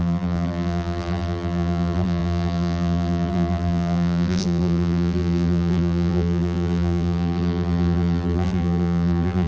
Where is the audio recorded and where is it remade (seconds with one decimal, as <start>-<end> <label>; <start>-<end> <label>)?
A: 0.0-9.5 remade